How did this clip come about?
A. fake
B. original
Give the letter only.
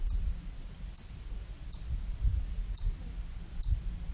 B